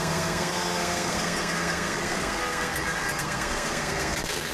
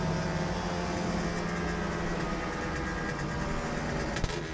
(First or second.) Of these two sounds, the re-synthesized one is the first